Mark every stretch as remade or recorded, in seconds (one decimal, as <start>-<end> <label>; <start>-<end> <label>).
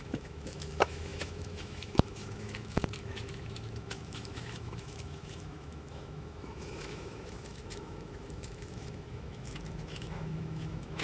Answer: 0.0-11.0 remade